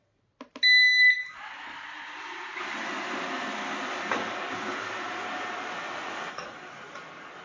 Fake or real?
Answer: real